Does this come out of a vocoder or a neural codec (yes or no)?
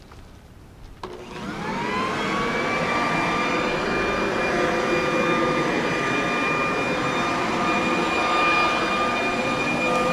no